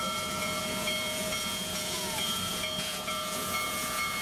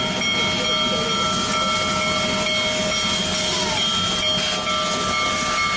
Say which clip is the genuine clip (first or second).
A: second